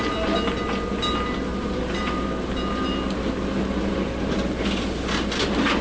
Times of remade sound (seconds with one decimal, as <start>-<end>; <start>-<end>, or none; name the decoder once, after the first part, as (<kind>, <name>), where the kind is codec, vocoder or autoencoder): none